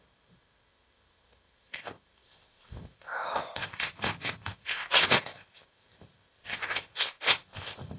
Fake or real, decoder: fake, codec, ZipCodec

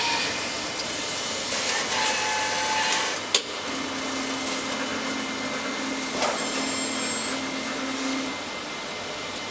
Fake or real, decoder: real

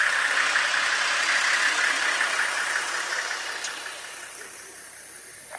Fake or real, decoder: real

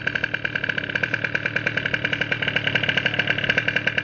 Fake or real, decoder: real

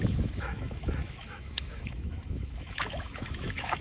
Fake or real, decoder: fake, autoencoder, DAC-VAE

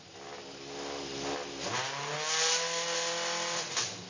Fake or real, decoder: real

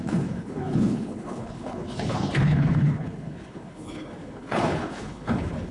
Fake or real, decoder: fake, codec, HILCodec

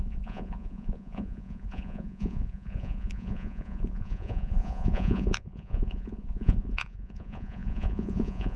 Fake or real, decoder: fake, vocoder, Vocos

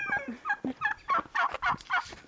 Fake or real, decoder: real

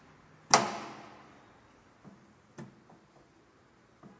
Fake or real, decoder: real